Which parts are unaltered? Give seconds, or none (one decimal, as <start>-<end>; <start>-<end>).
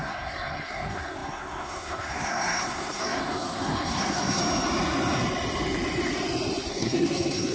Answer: 4.4-6.7